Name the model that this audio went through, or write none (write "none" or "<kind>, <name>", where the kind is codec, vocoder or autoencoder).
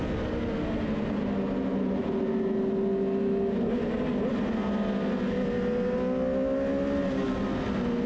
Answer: none